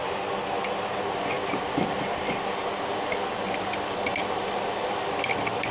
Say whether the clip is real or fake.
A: real